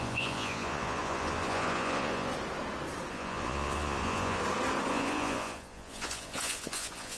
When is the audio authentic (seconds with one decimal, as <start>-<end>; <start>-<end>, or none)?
2.3-3.1; 4.4-4.9